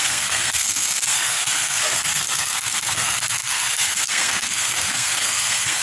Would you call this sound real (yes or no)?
no